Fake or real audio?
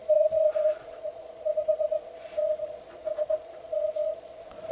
fake